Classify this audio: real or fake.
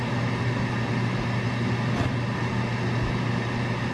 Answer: real